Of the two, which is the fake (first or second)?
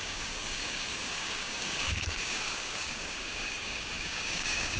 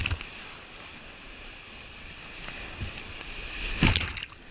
first